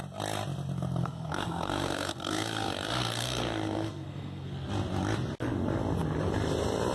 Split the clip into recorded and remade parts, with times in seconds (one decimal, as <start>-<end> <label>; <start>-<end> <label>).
0.0-1.0 recorded; 1.0-4.5 remade; 4.5-6.9 recorded